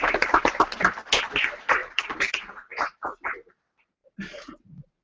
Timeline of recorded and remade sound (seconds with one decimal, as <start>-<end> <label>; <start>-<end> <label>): 0.0-1.8 recorded; 1.8-3.0 remade; 3.0-5.0 recorded